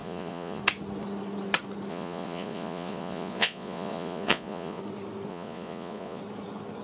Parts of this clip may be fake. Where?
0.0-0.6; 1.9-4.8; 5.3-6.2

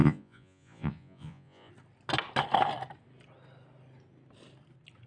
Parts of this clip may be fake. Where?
0.0-1.7

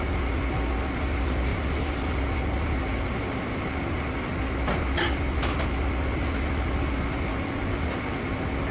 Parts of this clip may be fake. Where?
none

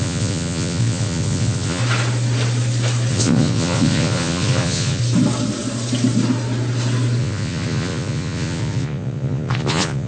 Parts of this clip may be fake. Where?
0.0-1.8; 3.1-5.0; 7.2-10.1

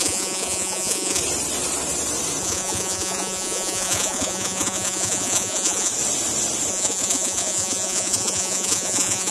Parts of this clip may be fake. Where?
0.0-1.2; 2.4-5.9; 6.7-9.3

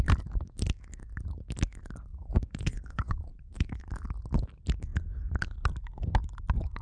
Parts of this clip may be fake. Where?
2.1-3.8

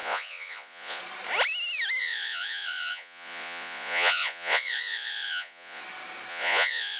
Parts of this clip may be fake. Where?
0.0-1.0; 2.0-5.8; 6.3-7.0